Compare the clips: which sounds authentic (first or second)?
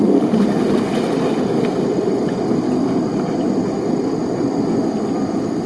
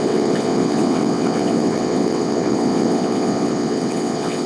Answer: first